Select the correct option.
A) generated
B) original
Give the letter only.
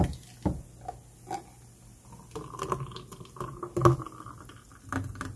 B